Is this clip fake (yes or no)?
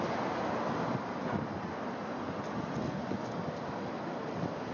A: no